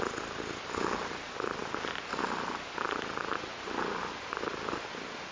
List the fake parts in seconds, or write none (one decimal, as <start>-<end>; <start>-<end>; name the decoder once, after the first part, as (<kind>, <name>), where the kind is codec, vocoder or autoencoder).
none